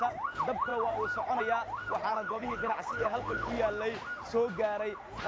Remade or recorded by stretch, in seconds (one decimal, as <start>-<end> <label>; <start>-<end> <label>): 0.0-2.1 recorded; 2.1-3.5 remade; 3.5-5.3 recorded